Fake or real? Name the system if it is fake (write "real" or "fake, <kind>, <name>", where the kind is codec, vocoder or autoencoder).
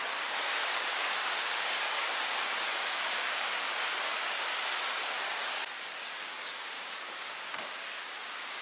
fake, codec, DAC